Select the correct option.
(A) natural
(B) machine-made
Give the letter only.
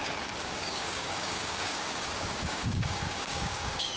B